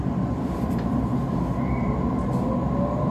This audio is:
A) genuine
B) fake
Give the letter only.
A